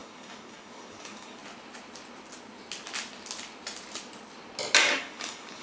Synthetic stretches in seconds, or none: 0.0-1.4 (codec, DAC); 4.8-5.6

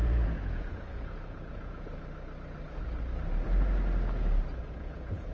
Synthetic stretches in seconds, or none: 0.0-1.9 (vocoder, Vocos); 4.6-5.3

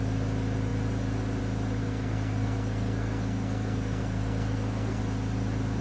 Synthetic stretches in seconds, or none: 1.8-5.0 (codec, SNAC)

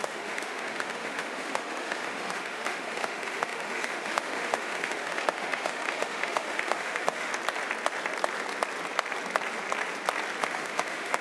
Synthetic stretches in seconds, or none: 0.0-7.3 (autoencoder, DAC-VAE); 10.4-11.2

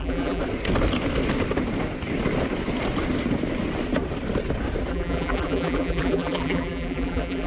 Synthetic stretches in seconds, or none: 0.0-0.4 (vocoder, BigVGAN v2); 4.9-7.5